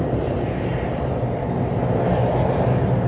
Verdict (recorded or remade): recorded